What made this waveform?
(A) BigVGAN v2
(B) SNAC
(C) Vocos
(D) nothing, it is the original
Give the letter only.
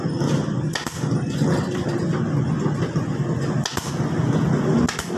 D